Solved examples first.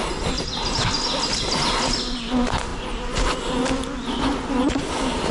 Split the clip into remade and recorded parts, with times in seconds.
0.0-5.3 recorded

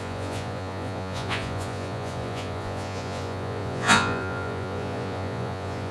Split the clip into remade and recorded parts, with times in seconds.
0.0-5.9 remade

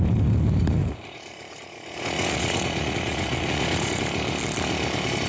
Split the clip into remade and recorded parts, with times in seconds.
0.0-0.8 recorded; 0.8-4.0 remade; 4.0-5.3 recorded

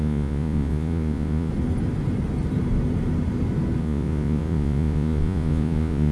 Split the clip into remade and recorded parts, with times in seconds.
0.0-1.5 remade; 1.5-3.8 recorded; 3.8-6.1 remade

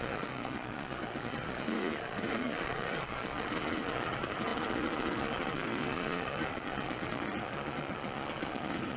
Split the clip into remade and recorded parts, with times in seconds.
0.0-9.0 remade

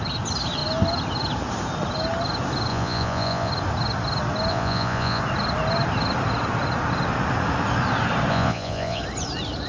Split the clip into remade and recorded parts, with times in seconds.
0.0-2.7 recorded; 2.7-3.5 remade; 3.5-4.5 recorded; 4.5-5.2 remade; 5.2-8.3 recorded; 8.3-9.0 remade; 9.0-9.7 recorded